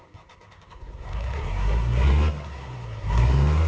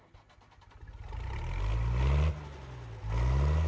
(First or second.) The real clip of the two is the second